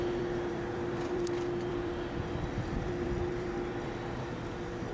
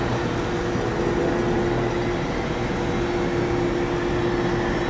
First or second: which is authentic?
second